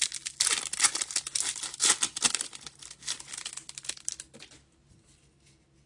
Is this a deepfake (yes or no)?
no